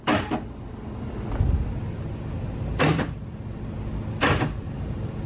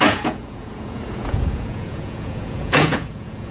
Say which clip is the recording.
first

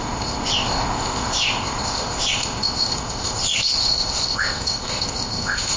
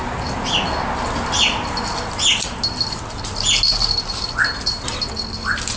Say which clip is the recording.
second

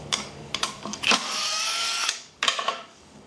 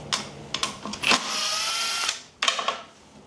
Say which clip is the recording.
second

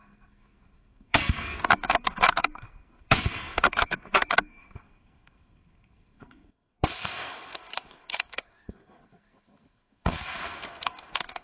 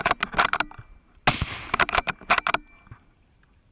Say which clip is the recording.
second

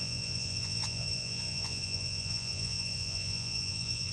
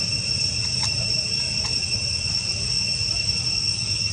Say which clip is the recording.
second